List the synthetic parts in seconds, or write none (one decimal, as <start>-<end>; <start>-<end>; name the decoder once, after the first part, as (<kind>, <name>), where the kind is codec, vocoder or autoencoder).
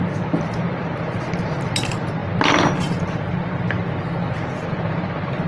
none